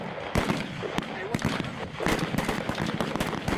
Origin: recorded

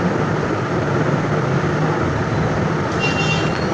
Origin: recorded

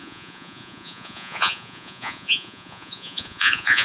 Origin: remade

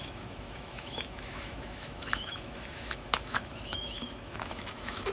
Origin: remade